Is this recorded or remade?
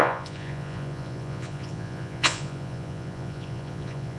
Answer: remade